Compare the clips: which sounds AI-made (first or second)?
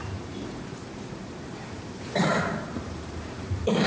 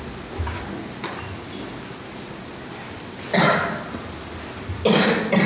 first